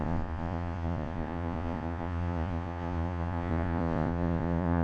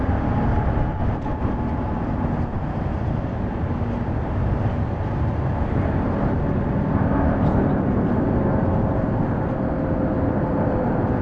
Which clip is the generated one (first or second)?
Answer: first